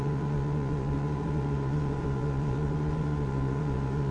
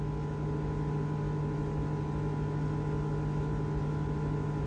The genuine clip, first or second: second